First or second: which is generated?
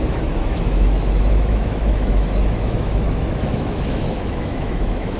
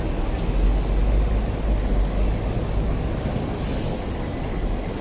first